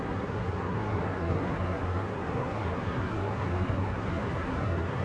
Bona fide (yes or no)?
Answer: no